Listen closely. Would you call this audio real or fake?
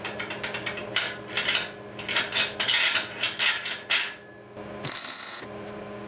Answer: real